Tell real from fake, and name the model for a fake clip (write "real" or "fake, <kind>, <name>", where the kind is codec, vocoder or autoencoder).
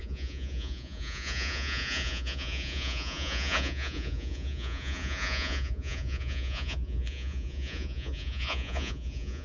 fake, vocoder, Vocos